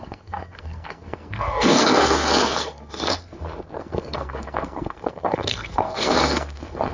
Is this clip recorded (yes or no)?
no